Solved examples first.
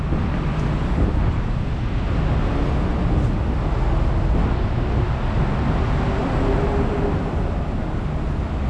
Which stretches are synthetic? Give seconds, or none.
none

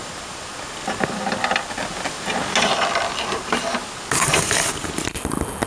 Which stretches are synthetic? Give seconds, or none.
none

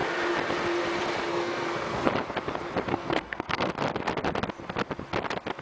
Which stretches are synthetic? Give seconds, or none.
1.3-2.1 (codec, SNAC); 2.9-3.7

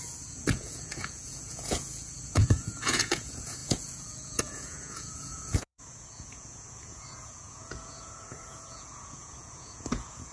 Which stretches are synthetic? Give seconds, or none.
0.0-10.3 (vocoder, Vocos)

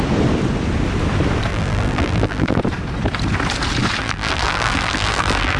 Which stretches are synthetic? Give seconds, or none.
1.5-2.6 (vocoder, BigVGAN v2); 4.0-5.6

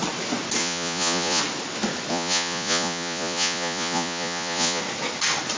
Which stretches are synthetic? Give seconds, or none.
0.6-1.4 (vocoder, Vocos); 2.1-4.8

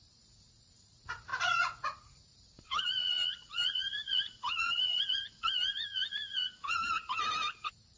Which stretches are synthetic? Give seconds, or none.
0.0-8.0 (vocoder, Vocos)

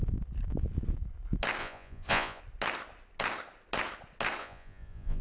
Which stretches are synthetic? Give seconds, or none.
1.6-2.4 (vocoder, Vocos); 4.4-5.2